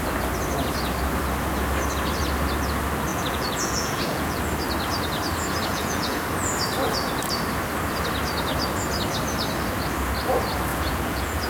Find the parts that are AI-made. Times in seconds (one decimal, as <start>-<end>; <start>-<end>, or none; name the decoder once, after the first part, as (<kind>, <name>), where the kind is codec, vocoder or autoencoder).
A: 3.1-4.4 (vocoder, Vocos); 5.7-6.2; 10.7-11.5